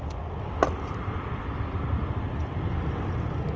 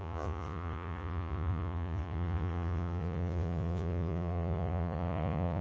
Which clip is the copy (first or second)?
second